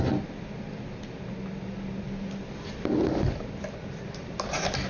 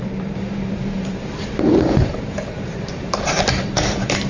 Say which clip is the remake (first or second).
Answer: second